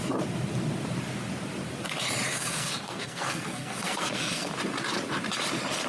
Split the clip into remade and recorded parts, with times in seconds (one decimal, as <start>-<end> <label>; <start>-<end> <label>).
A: 0.0-2.3 recorded; 2.3-4.5 remade; 4.5-5.9 recorded